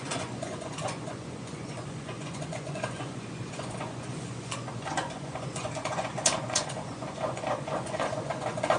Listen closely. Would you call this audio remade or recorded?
remade